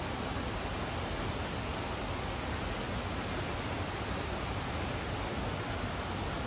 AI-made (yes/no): no